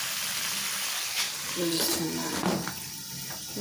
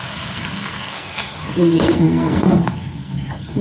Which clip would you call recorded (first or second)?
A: first